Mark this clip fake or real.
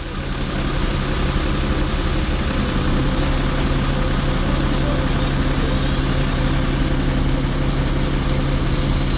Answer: real